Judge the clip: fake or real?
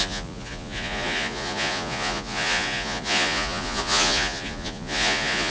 fake